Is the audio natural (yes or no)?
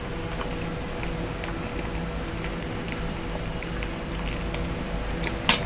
yes